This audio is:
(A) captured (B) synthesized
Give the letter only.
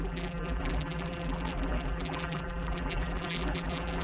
B